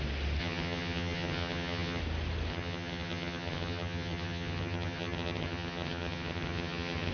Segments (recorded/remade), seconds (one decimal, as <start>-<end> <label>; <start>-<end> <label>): 0.0-0.4 recorded; 0.4-2.0 remade; 2.0-2.5 recorded; 2.5-7.1 remade